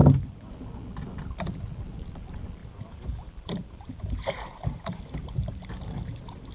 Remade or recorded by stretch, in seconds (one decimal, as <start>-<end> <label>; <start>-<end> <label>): 0.0-0.5 remade; 0.5-2.6 recorded; 2.6-6.5 remade